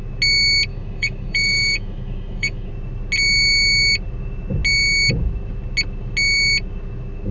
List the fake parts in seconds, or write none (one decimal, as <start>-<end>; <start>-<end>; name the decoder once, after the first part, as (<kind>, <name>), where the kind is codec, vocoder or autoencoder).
0.7-2.7 (autoencoder, DAC-VAE)